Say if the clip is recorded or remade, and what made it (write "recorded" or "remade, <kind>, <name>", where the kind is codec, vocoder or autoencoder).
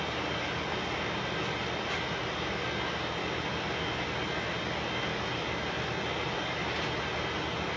recorded